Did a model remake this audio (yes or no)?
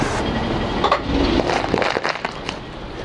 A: no